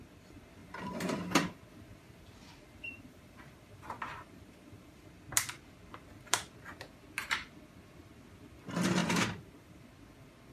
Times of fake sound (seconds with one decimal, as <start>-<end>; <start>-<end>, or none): 0.6-5.0; 9.0-9.8